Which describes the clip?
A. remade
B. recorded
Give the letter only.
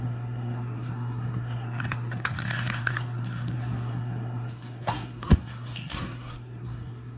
A